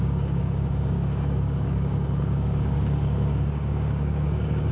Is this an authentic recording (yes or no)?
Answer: no